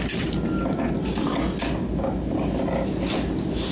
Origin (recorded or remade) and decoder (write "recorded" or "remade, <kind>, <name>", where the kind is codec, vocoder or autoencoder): recorded